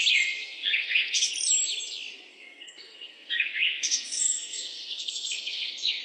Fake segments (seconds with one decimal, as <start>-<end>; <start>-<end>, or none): 0.4-1.3; 2.3-6.0